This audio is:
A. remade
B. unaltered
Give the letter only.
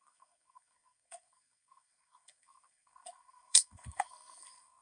A